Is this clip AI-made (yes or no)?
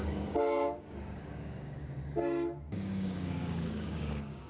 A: yes